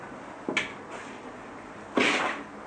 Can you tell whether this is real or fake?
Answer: real